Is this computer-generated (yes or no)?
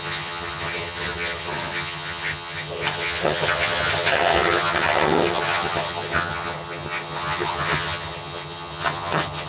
yes